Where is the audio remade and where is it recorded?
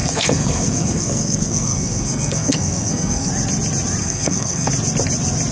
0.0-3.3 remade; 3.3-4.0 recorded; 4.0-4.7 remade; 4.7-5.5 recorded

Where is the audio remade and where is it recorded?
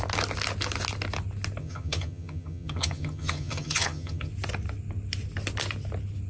0.0-1.6 recorded; 1.6-4.3 remade; 4.3-6.3 recorded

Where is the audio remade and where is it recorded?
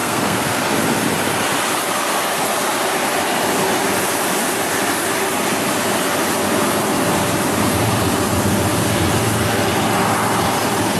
0.0-0.6 remade; 0.6-11.0 recorded